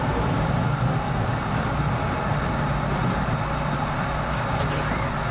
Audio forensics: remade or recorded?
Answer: recorded